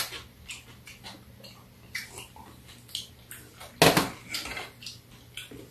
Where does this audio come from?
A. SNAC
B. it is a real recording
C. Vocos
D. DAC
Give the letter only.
B